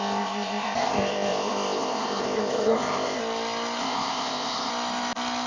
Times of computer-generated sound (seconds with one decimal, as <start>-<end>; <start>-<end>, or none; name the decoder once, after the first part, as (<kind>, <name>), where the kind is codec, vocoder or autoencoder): 0.0-3.2 (codec, ZipCodec); 3.8-4.7

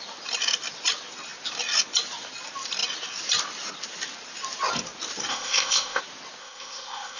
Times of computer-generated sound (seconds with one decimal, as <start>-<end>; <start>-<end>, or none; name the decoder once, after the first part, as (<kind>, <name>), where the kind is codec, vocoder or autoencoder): 5.3-6.0 (codec, ZipCodec); 6.4-7.2

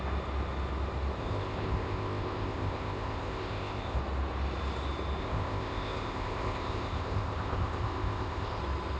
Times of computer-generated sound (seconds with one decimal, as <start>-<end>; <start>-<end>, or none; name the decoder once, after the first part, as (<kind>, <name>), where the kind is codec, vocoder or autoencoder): 1.2-4.0 (codec, ZipCodec); 5.2-8.6

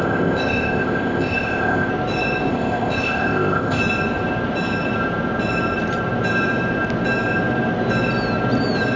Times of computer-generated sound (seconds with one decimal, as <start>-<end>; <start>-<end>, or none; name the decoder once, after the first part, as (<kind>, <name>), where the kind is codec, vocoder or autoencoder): 0.0-1.9 (codec, ZipCodec); 2.5-3.8

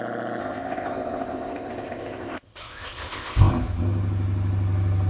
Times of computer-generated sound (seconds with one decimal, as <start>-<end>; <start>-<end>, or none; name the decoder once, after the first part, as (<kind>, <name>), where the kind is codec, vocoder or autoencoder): 0.4-3.5 (codec, ZipCodec)